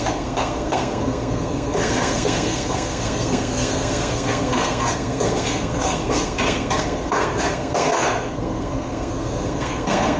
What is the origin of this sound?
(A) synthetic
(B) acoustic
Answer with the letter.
A